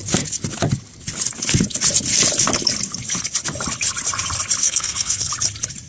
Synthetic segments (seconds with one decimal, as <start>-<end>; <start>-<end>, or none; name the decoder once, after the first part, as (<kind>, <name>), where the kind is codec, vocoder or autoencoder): 4.6-5.3 (codec, SNAC)

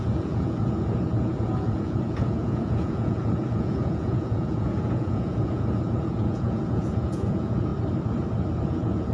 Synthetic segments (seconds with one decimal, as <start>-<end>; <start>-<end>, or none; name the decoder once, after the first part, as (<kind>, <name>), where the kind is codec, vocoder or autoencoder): 0.0-7.7 (vocoder, Vocos); 8.6-9.1

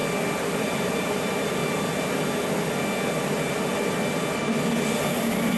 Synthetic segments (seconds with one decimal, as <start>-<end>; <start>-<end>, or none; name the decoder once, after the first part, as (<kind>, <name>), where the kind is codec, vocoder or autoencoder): 0.6-1.6 (vocoder, BigVGAN v2); 5.0-5.6

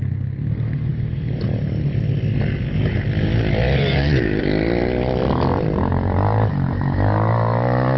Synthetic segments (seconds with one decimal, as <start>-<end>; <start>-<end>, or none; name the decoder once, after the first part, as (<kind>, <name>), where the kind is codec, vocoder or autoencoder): 3.8-4.4 (vocoder, BigVGAN v2)

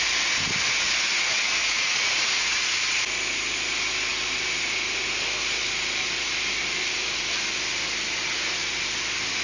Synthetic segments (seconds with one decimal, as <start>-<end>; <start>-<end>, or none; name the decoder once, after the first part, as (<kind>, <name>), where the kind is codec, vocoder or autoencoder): 1.6-2.7 (vocoder, Vocos)

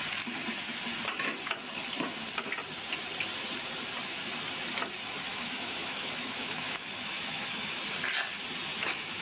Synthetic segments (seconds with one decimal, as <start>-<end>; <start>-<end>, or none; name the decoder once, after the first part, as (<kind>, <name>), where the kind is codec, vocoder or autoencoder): 5.3-7.8 (autoencoder, DAC-VAE); 8.7-9.2

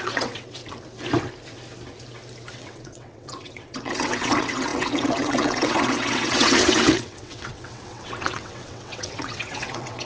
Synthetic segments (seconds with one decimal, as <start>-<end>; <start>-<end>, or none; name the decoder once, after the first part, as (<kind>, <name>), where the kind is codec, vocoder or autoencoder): 0.0-0.6 (vocoder, WaveNeXt); 2.5-10.1

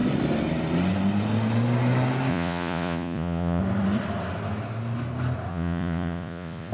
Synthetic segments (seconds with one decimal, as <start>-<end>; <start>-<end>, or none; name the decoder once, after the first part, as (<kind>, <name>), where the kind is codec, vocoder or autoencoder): 2.3-3.6 (vocoder, Vocos); 5.5-6.7